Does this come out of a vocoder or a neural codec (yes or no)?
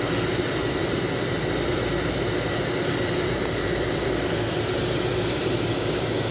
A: no